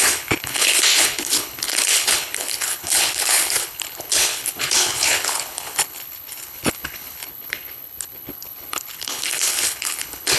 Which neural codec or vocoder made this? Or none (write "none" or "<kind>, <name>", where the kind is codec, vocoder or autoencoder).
codec, HILCodec